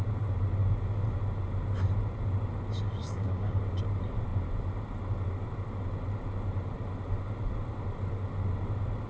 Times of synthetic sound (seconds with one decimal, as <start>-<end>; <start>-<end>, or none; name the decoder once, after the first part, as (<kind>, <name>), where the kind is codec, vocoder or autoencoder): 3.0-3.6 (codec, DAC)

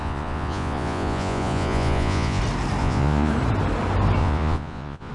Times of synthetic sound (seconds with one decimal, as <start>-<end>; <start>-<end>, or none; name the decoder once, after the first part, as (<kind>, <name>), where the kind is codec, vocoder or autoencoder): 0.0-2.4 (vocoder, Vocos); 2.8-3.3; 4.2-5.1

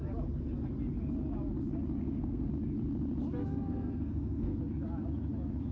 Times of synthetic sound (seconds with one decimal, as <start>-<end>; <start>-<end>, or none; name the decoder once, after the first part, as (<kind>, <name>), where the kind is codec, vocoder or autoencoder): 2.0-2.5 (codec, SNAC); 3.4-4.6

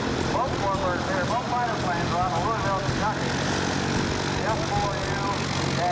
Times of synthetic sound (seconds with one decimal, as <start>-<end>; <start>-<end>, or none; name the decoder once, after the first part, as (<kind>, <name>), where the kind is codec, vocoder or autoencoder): none